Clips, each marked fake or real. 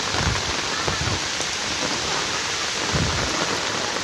real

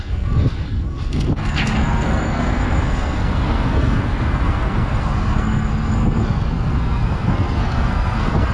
fake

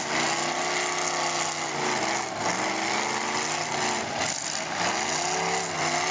real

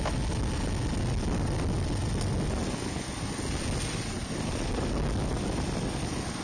real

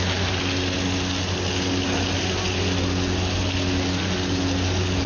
real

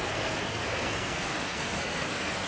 fake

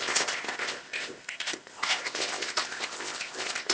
fake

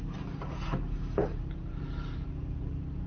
real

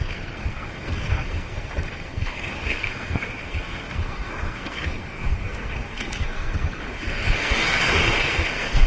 fake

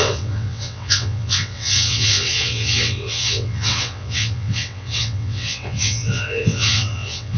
fake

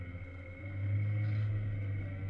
fake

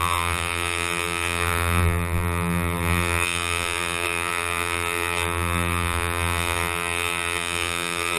fake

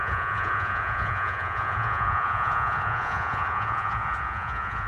fake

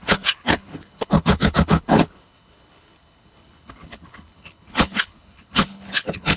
fake